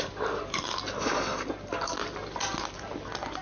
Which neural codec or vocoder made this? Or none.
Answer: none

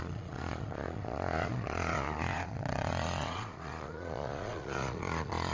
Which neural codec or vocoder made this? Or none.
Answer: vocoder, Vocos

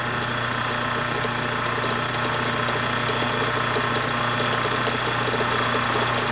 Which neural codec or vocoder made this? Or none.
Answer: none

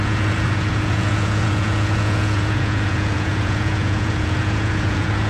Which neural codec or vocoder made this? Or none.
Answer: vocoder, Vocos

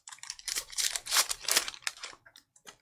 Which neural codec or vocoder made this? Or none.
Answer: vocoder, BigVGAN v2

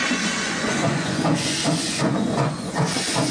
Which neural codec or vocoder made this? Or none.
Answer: vocoder, Vocos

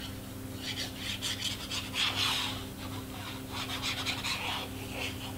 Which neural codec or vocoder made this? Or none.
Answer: none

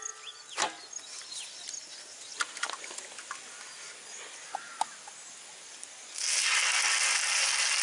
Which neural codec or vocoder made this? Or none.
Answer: none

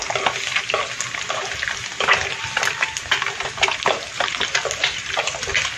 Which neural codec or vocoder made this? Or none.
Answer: none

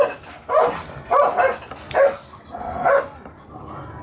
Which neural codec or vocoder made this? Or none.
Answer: none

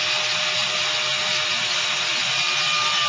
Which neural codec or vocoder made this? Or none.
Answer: none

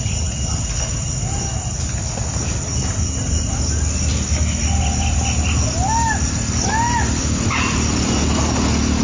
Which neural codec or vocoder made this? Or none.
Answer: none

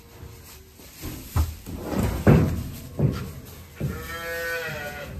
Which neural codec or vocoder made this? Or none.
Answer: none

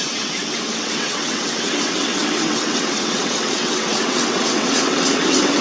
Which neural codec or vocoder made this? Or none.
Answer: vocoder, WaveNeXt